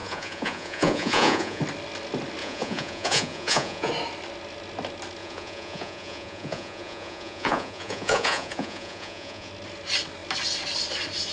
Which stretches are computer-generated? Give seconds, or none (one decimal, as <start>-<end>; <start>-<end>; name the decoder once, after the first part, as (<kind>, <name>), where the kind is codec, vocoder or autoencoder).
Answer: 0.0-1.6 (vocoder, Vocos); 2.4-3.9; 5.2-9.5